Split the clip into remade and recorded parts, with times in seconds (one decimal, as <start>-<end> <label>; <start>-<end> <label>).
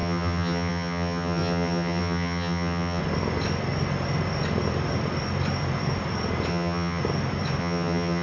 0.0-3.0 remade; 3.0-6.5 recorded; 6.5-7.0 remade; 7.0-7.6 recorded; 7.6-8.2 remade